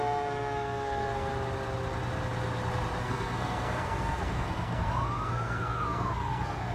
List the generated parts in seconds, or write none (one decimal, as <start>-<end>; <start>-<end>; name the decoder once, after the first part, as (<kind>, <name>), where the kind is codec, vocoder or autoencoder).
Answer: 0.0-1.3 (codec, SNAC); 3.0-6.7